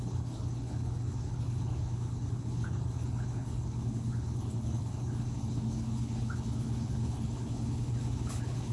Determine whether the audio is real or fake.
fake